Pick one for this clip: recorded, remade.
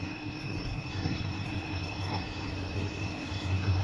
remade